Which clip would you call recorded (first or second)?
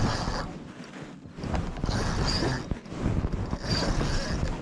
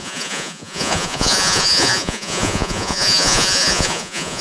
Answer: first